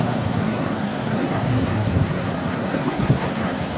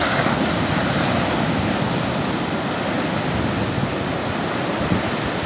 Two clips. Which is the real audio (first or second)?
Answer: second